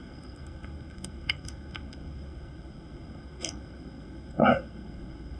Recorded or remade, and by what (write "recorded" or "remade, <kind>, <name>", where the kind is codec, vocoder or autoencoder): remade, codec, SNAC